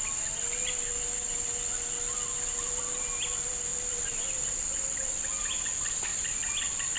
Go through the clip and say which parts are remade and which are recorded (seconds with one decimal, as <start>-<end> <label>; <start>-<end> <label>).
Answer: 0.0-7.0 recorded